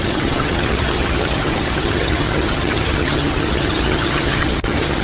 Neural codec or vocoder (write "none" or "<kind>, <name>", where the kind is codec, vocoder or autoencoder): vocoder, HiFi-GAN